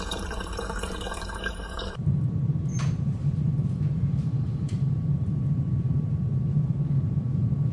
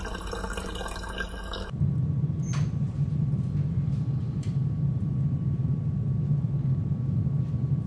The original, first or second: second